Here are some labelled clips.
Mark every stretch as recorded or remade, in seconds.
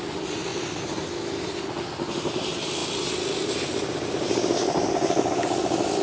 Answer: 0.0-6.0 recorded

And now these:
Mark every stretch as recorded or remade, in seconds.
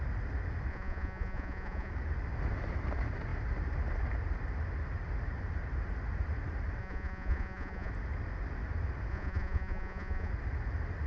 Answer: 0.0-0.7 recorded; 0.7-1.9 remade; 1.9-6.8 recorded; 6.8-7.9 remade; 7.9-9.1 recorded; 9.1-10.3 remade; 10.3-11.1 recorded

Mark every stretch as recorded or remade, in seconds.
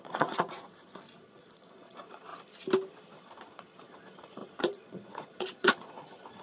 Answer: 0.0-2.3 remade; 2.3-3.2 recorded; 3.2-6.4 remade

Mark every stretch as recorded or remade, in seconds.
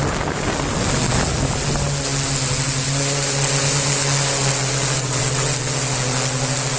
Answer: 0.0-6.8 recorded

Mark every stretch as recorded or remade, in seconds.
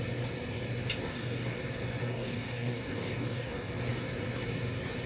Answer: 0.0-1.1 recorded; 1.1-1.6 remade; 1.6-2.0 recorded; 2.0-3.7 remade; 3.7-5.1 recorded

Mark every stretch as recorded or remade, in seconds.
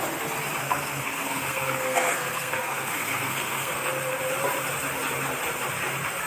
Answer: 0.0-0.6 recorded; 0.6-3.9 remade; 3.9-6.3 recorded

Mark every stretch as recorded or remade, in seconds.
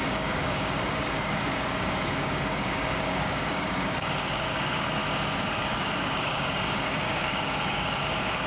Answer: 0.0-5.0 remade; 5.0-5.5 recorded; 5.5-8.5 remade